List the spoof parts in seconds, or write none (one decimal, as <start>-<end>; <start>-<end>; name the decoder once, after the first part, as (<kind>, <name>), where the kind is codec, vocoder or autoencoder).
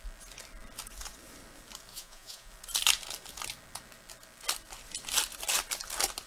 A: 1.9-2.5 (vocoder, Vocos)